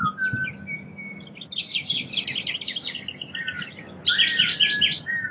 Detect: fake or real real